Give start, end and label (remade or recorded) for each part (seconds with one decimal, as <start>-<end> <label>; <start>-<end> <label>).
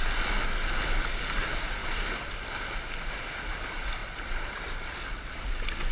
0.0-5.9 recorded